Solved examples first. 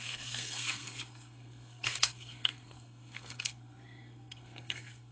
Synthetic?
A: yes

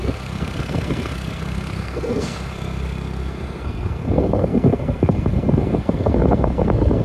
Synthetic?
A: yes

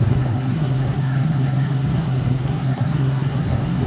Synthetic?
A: yes